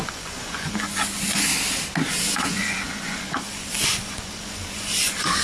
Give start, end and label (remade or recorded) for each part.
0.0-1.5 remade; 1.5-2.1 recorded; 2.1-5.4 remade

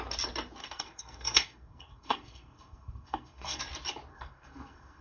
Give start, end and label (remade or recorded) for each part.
0.0-0.6 recorded; 0.6-3.6 remade; 3.6-4.1 recorded; 4.1-5.0 remade

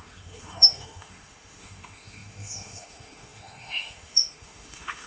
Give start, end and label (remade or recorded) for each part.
0.0-5.1 remade

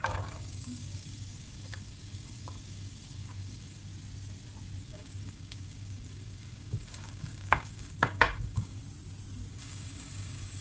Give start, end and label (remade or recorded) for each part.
0.0-3.9 remade; 3.9-4.8 recorded; 4.8-8.8 remade; 8.8-9.5 recorded; 9.5-10.6 remade

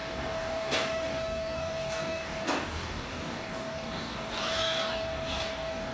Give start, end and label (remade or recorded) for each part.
0.0-5.9 remade